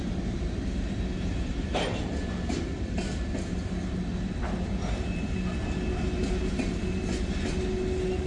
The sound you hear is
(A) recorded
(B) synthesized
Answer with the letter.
A